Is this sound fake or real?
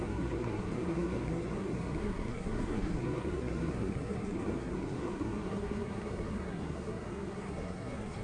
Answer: fake